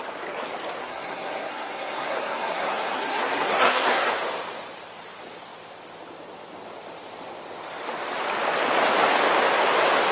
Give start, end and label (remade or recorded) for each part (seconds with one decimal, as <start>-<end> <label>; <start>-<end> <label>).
0.0-0.8 recorded; 0.8-4.1 remade; 4.1-10.1 recorded